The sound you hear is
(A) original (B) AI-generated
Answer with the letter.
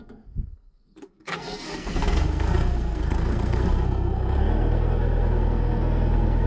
B